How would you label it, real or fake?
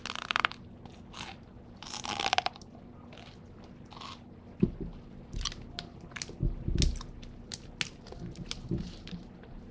real